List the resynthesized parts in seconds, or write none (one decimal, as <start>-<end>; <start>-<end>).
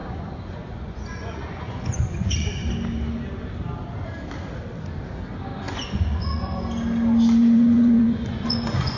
0.0-2.7; 5.5-6.4; 7.4-9.0